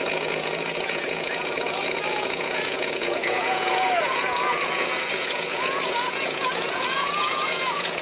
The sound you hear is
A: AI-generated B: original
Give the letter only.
A